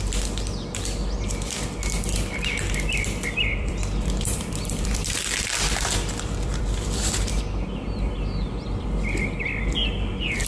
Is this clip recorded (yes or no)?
no